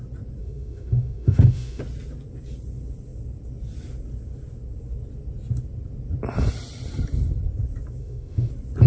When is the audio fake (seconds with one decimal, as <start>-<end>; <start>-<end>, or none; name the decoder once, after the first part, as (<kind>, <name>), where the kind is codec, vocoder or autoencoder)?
0.4-1.8 (autoencoder, DAC-VAE); 8.0-8.5

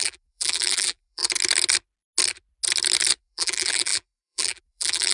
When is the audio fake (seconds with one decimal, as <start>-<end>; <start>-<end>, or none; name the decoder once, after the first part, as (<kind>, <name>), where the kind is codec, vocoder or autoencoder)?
0.0-1.2 (vocoder, BigVGAN v2); 3.2-5.1